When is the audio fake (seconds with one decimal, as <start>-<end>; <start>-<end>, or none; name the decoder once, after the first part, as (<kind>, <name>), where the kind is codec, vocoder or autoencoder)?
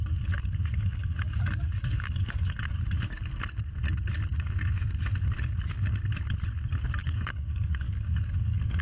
1.0-2.6 (codec, DAC); 4.3-5.0; 7.0-8.8